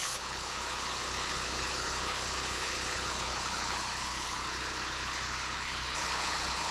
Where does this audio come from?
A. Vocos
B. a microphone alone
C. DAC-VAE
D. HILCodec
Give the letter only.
D